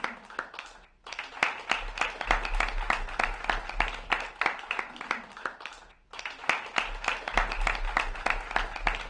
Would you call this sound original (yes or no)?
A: yes